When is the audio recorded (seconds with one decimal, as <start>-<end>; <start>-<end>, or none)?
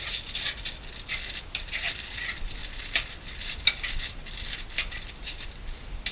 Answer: 0.0-6.1